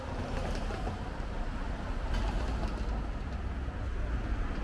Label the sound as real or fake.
real